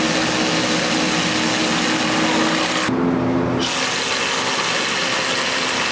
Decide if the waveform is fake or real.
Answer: real